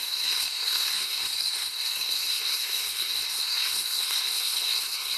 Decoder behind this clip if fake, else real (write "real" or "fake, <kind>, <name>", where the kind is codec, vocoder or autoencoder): fake, codec, SNAC